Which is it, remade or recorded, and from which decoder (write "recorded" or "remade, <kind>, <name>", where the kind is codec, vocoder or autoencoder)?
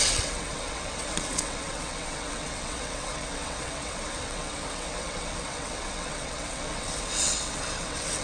remade, vocoder, WaveNeXt